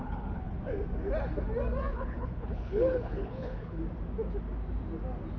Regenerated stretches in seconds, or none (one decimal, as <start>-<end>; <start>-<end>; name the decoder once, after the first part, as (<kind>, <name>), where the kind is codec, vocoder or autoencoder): 0.0-0.6 (codec, HILCodec); 1.9-3.8